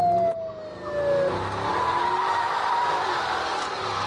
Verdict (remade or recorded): recorded